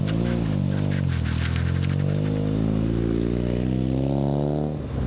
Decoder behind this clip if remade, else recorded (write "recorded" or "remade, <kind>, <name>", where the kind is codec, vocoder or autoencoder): recorded